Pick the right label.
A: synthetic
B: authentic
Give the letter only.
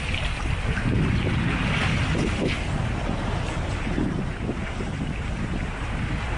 B